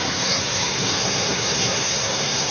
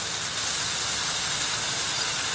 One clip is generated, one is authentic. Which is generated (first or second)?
first